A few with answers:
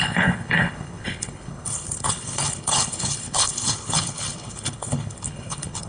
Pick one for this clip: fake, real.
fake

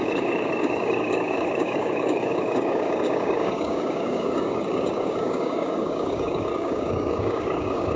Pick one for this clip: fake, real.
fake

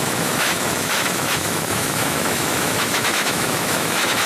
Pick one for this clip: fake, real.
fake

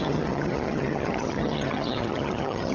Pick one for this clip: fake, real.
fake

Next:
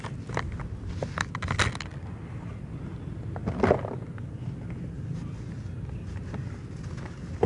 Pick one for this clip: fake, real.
real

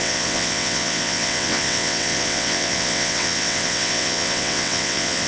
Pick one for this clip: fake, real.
fake